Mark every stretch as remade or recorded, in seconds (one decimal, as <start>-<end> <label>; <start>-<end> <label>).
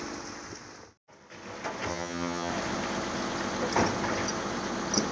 0.0-1.9 recorded; 1.9-2.5 remade; 2.5-5.1 recorded